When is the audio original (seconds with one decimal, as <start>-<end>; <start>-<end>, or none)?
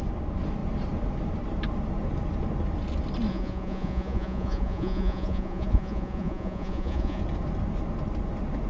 0.0-3.3; 7.2-8.7